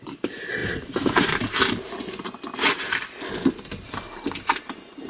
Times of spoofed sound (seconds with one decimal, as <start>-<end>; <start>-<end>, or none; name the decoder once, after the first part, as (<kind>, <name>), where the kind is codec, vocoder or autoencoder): none